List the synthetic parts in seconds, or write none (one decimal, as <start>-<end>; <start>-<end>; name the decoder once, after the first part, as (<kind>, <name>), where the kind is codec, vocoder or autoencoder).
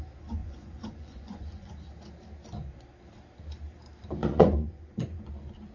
0.4-1.7 (vocoder, Vocos); 4.2-5.3